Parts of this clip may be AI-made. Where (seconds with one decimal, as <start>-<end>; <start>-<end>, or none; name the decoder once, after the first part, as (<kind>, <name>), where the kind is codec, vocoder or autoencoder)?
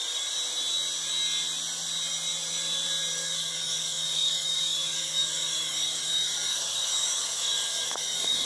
3.2-8.5 (codec, DAC)